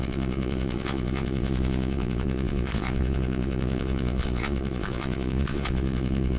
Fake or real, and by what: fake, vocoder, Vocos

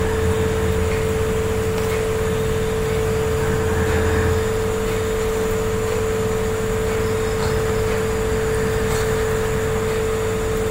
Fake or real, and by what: real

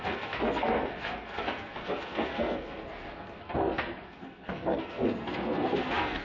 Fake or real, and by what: fake, codec, SNAC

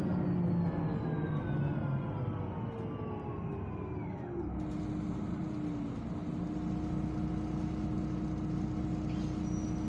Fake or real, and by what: real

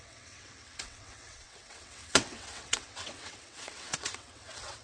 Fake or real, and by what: fake, vocoder, WaveNeXt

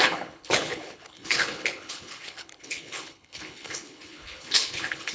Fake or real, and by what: fake, codec, HILCodec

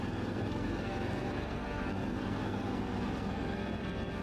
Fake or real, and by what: fake, codec, SNAC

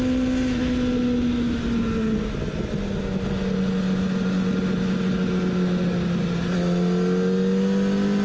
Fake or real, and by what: real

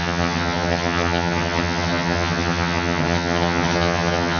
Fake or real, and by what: fake, vocoder, HiFi-GAN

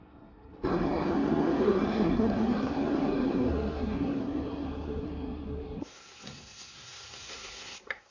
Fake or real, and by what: fake, codec, SNAC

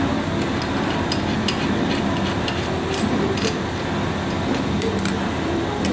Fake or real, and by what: real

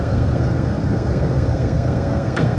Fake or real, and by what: fake, codec, SNAC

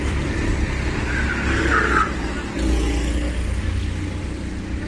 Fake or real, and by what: real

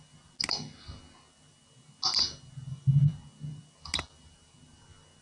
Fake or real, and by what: real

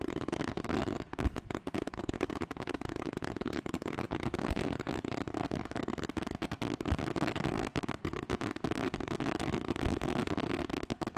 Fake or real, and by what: fake, codec, SNAC